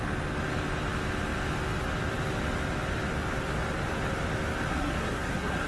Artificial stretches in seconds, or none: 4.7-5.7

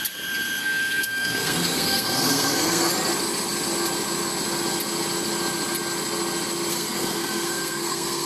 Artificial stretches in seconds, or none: 0.6-2.9; 6.7-8.3

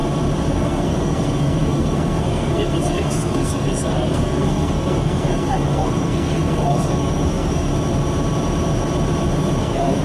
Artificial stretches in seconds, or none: 0.5-7.7; 9.6-10.0

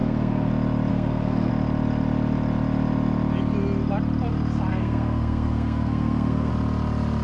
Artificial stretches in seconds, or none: 0.0-0.5; 0.9-1.5; 4.7-6.5

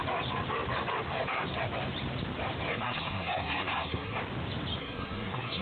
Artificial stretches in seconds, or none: 2.7-4.2; 4.8-5.6

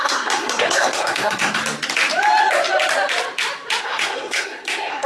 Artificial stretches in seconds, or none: 0.0-1.6; 3.8-5.1